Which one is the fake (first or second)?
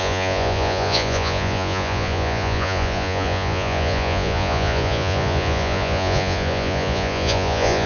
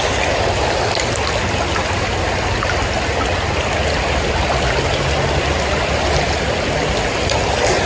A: first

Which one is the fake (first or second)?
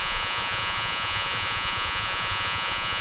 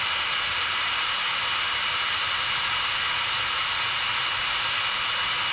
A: first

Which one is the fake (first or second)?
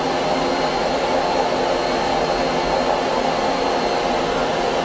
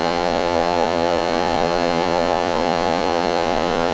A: second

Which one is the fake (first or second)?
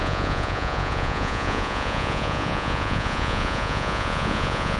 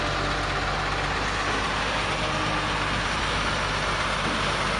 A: first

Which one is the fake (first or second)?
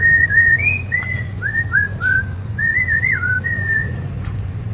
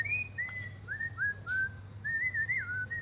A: first